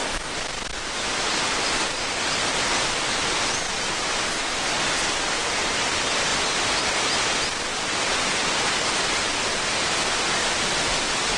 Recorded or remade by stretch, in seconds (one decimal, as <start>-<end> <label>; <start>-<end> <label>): 0.0-11.4 recorded